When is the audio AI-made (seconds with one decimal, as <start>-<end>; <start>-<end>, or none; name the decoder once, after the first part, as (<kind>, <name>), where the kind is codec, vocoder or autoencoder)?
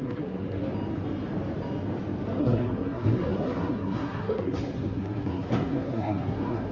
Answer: 0.0-0.6 (codec, SNAC); 2.4-6.7